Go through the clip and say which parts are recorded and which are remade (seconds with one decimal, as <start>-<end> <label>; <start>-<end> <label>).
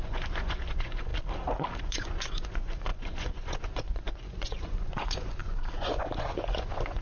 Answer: 0.0-1.1 remade; 1.1-1.8 recorded; 1.8-7.0 remade